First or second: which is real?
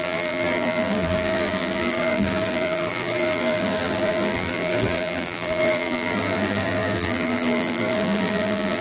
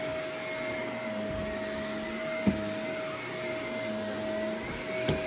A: second